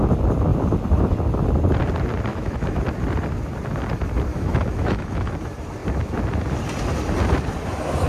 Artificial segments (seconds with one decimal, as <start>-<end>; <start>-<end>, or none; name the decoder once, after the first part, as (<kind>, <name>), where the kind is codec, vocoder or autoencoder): 2.3-2.8 (autoencoder, DAC-VAE); 4.3-5.3

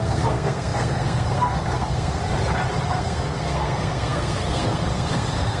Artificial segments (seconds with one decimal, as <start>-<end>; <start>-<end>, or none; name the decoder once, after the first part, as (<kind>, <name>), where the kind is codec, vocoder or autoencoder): 0.0-2.2 (codec, SNAC); 2.9-5.6

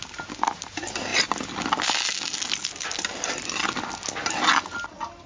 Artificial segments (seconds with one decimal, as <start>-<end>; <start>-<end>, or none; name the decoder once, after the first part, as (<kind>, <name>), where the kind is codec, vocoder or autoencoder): none